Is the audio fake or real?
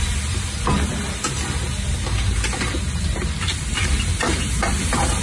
real